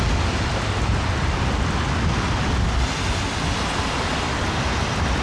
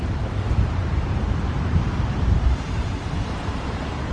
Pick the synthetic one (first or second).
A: second